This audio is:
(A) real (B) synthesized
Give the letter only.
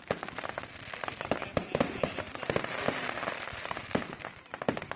A